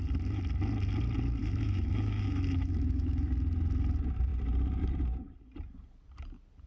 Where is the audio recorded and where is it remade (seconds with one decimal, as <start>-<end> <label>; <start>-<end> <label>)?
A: 0.0-1.4 recorded; 1.4-3.3 remade; 3.3-6.7 recorded